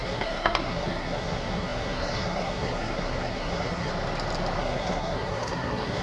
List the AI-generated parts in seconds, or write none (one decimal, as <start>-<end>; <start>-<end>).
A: 0.0-3.9; 4.6-6.0